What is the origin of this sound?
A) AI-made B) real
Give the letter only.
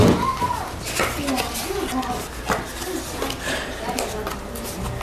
B